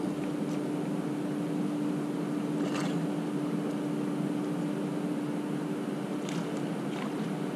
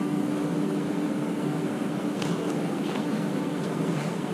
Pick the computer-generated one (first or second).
second